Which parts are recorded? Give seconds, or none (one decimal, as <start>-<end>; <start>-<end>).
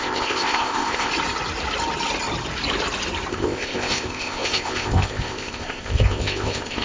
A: 1.1-3.3